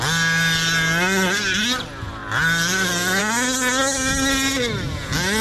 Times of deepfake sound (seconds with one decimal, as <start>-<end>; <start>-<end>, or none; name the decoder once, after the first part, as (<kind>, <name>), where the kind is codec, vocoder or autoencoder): none